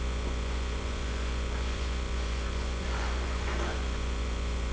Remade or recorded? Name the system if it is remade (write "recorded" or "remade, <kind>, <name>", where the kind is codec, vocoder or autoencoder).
remade, vocoder, Vocos